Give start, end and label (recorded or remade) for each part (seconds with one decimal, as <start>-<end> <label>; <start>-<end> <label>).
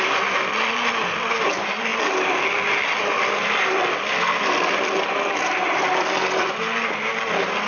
0.0-1.9 remade; 1.9-2.4 recorded; 2.4-7.7 remade